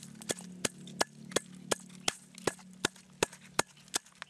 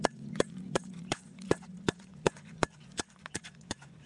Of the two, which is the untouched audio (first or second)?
first